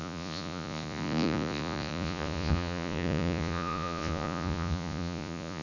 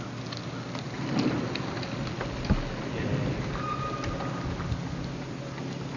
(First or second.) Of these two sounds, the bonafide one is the second